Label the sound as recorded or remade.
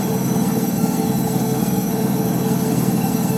remade